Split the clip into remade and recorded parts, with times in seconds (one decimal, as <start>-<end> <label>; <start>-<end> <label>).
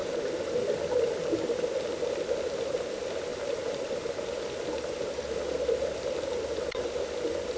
0.0-2.7 remade; 2.7-3.3 recorded; 3.3-7.6 remade